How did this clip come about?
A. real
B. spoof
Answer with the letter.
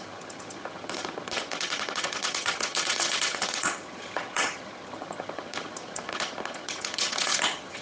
B